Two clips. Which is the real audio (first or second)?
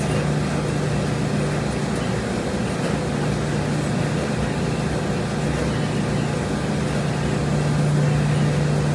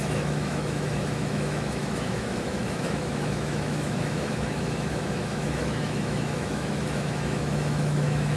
first